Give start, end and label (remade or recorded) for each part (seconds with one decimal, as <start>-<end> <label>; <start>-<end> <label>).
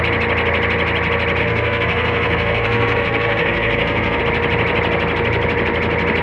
0.0-1.4 recorded; 1.4-4.2 remade; 4.2-6.2 recorded